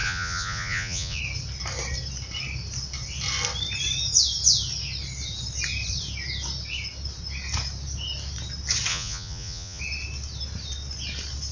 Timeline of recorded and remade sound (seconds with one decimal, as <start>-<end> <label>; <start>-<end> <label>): 0.0-1.2 remade; 1.2-8.9 recorded; 8.9-9.8 remade; 9.8-11.5 recorded